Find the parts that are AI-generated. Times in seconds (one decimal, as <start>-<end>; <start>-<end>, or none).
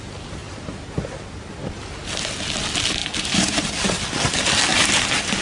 3.0-3.7; 4.7-5.4